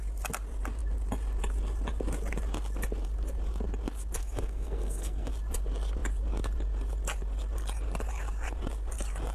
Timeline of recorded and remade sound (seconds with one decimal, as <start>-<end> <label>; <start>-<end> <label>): 0.0-4.2 recorded; 4.2-5.3 remade; 5.3-9.3 recorded